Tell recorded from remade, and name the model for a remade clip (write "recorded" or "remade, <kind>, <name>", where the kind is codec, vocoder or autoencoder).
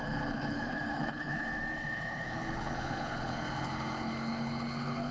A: remade, codec, HILCodec